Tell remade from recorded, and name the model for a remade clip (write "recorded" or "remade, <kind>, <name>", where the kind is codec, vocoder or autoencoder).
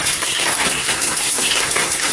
remade, codec, SNAC